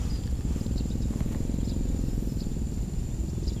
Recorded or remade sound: recorded